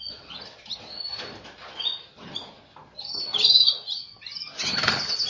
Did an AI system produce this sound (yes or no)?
no